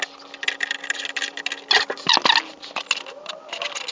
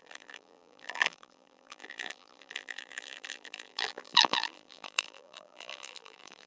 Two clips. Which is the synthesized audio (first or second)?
second